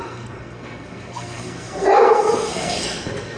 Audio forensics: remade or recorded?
remade